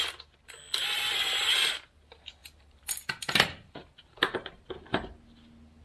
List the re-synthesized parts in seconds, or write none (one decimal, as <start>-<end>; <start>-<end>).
2.4-4.6